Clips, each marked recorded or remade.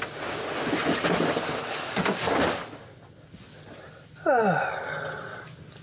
recorded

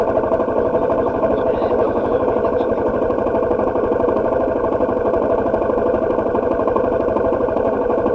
remade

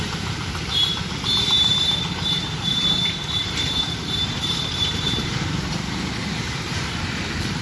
remade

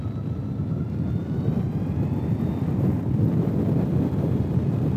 remade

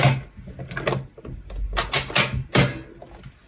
recorded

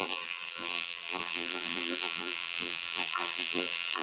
remade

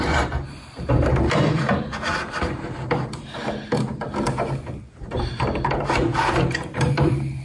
remade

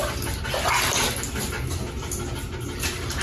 recorded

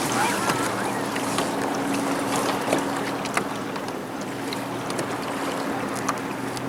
recorded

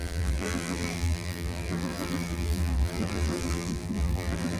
remade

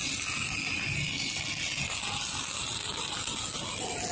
recorded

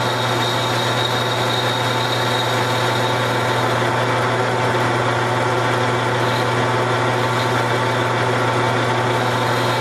recorded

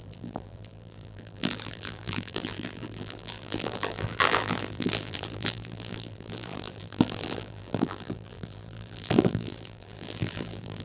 remade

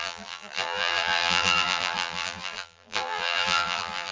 remade